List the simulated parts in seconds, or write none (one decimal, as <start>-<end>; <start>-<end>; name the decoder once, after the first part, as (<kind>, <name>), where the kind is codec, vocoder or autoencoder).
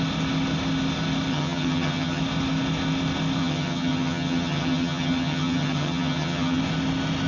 1.3-2.2 (vocoder, HiFi-GAN); 3.4-6.6